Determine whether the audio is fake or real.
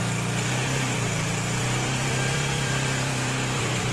fake